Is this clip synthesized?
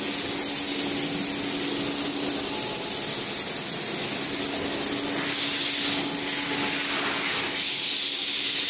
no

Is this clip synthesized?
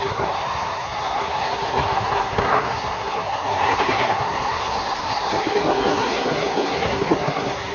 yes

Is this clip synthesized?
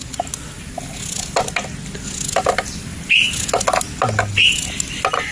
no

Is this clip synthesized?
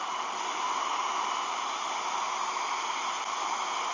no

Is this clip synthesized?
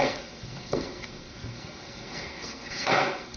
yes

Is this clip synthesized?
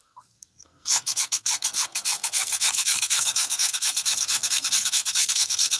yes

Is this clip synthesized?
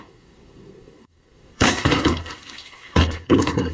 yes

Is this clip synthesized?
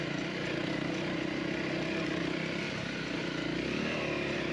no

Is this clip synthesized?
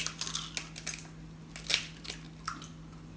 no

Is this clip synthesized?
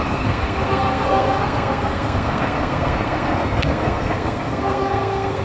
yes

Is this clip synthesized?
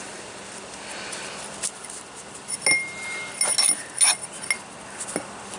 no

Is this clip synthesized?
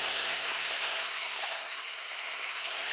yes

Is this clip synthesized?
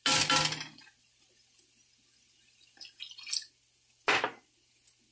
no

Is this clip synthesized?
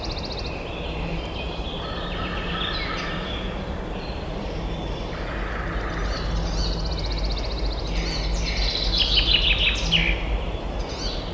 no